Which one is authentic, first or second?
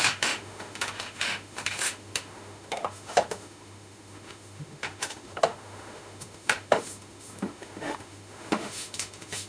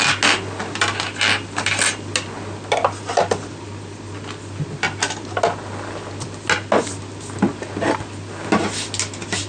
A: second